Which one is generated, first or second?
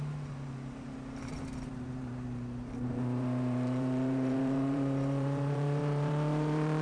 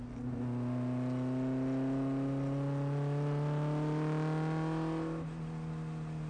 first